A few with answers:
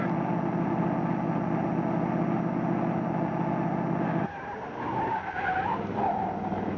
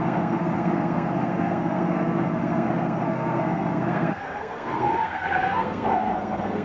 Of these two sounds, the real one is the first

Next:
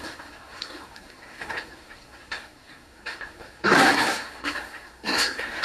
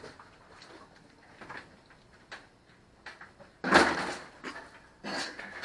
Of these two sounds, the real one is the second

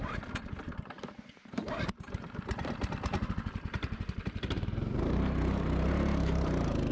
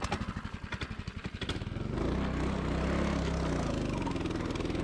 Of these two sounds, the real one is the second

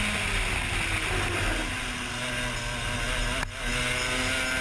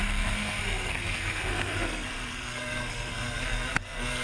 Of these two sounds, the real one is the first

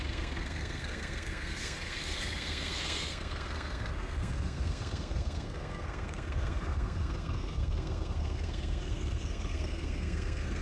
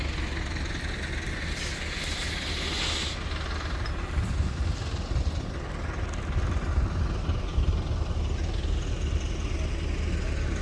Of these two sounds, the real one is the second